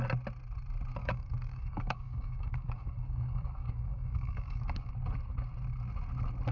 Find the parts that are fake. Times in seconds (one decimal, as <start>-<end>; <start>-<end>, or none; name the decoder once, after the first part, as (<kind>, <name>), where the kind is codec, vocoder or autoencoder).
1.0-4.9 (codec, DAC)